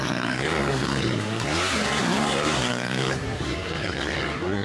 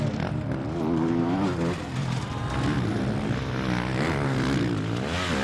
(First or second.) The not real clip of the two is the first